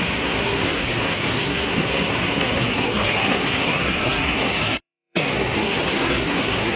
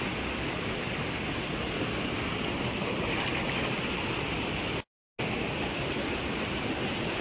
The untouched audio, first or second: second